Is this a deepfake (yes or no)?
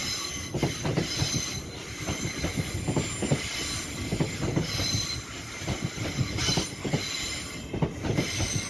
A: no